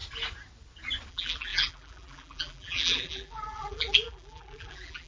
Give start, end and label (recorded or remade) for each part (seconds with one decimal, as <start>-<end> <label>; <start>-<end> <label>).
0.0-1.1 recorded; 1.1-5.1 remade